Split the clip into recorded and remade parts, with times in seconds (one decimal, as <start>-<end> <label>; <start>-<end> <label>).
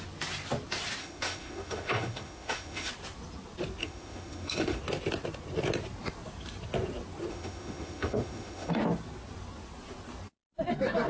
0.0-1.0 recorded; 1.0-2.9 remade; 2.9-3.8 recorded; 3.8-4.8 remade; 4.8-7.3 recorded; 7.3-8.7 remade; 8.7-11.1 recorded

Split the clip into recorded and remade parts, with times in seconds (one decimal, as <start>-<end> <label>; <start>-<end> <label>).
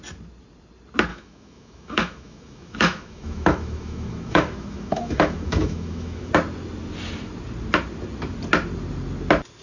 0.0-1.1 recorded; 1.1-6.3 remade; 6.3-9.6 recorded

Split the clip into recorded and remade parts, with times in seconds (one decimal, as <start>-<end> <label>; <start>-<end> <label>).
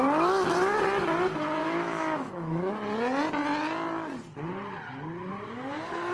0.0-1.6 recorded; 1.6-2.7 remade; 2.7-6.1 recorded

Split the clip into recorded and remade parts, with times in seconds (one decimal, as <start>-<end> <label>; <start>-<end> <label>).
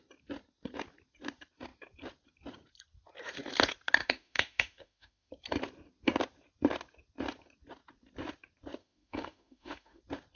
0.0-4.0 recorded; 4.0-5.3 remade; 5.3-8.8 recorded; 8.8-10.0 remade; 10.0-10.4 recorded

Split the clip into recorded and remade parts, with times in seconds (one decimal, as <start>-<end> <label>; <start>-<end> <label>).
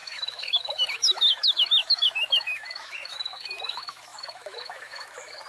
0.0-5.5 remade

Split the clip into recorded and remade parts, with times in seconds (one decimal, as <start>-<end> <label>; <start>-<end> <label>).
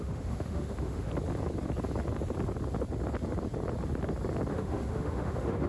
0.0-1.1 remade; 1.1-4.5 recorded; 4.5-5.7 remade